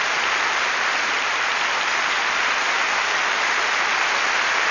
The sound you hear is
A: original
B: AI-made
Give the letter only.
A